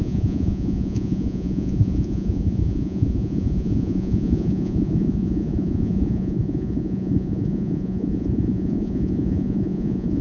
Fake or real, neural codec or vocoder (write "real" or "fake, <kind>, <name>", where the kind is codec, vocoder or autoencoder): fake, vocoder, Vocos